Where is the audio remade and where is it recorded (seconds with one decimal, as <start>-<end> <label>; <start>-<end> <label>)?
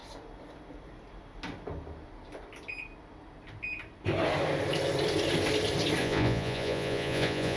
0.0-6.0 recorded; 6.0-7.6 remade